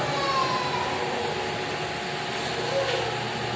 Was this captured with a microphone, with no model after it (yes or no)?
yes